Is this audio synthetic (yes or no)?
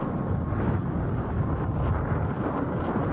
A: no